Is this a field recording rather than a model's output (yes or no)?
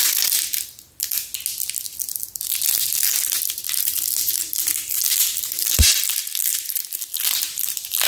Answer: yes